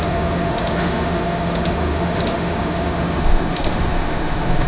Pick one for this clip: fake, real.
fake